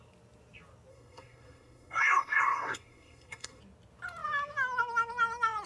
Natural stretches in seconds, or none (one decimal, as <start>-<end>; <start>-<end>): 0.0-0.9; 3.6-5.7